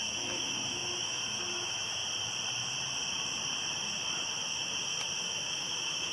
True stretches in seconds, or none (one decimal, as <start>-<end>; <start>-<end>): 2.0-5.2